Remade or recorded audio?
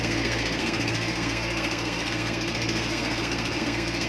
remade